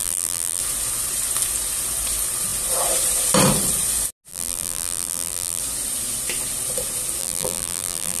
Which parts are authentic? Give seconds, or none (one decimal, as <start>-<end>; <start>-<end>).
0.6-4.3; 5.6-7.2